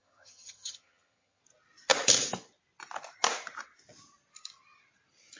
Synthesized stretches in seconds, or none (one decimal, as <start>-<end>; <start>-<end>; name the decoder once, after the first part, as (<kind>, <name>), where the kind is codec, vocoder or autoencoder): 0.0-1.4 (vocoder, HiFi-GAN)